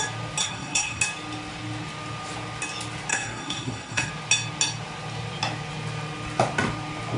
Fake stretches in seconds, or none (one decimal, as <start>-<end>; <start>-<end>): 0.4-1.0; 3.1-4.1